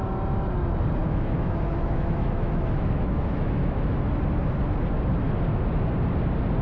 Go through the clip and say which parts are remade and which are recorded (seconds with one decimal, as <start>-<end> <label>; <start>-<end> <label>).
0.0-1.0 recorded; 1.0-4.2 remade; 4.2-6.6 recorded